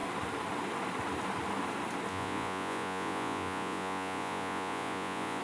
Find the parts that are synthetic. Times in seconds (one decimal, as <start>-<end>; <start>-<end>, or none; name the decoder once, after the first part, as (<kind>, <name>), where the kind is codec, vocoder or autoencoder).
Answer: 2.1-5.4 (vocoder, Vocos)